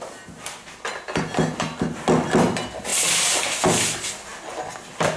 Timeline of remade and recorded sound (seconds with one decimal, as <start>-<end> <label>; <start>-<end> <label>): 0.0-5.2 recorded